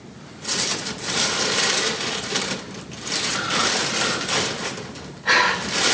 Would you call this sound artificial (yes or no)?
no